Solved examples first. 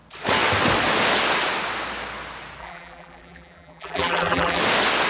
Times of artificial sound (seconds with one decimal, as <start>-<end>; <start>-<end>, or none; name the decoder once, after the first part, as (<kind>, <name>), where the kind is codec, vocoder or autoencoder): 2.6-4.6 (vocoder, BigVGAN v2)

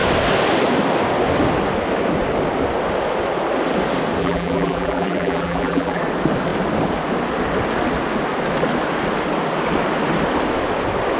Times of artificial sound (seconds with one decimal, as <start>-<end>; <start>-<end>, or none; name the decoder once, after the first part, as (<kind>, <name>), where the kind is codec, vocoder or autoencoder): 4.2-6.0 (vocoder, BigVGAN v2)

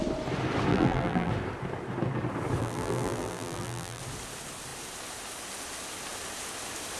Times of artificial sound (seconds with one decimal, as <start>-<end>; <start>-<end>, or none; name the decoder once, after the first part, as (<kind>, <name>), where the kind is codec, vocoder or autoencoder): 0.7-1.3 (vocoder, BigVGAN v2); 2.6-4.0